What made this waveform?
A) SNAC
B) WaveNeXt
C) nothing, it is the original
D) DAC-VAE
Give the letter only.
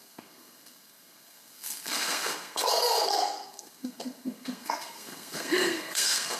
A